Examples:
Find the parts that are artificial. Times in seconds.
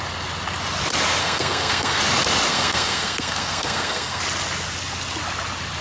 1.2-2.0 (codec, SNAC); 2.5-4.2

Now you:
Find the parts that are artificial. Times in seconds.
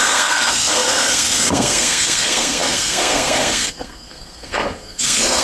0.0-5.4 (codec, SNAC)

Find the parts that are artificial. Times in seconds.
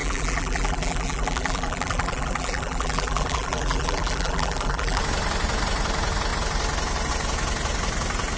0.0-5.0 (vocoder, BigVGAN v2)